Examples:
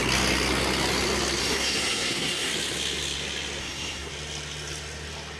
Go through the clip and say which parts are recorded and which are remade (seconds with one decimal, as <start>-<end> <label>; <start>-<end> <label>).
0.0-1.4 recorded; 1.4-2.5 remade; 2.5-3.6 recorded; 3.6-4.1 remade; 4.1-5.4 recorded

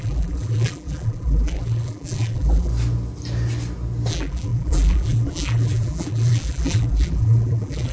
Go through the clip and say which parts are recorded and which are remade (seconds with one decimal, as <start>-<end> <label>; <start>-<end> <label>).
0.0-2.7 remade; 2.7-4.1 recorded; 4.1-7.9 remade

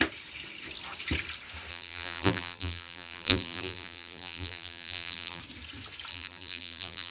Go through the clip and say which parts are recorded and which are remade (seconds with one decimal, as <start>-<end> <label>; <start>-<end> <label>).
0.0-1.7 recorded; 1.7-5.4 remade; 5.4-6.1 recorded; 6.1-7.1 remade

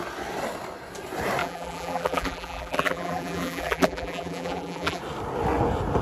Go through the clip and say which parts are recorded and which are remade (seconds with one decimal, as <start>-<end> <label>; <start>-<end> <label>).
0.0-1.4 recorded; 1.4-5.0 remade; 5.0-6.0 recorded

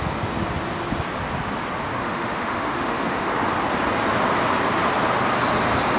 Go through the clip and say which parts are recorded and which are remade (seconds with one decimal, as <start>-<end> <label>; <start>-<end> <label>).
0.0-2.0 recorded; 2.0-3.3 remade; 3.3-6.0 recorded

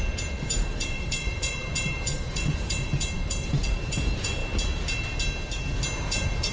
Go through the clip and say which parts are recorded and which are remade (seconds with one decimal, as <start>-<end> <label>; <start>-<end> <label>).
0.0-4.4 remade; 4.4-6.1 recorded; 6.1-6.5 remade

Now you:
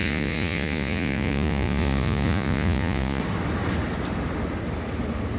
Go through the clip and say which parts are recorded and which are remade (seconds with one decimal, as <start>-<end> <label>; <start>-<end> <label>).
0.0-3.2 remade; 3.2-5.4 recorded

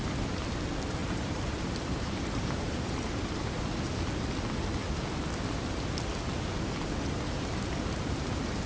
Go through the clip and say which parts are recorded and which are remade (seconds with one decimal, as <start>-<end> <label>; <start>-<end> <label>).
0.0-1.0 recorded; 1.0-3.6 remade; 3.6-8.7 recorded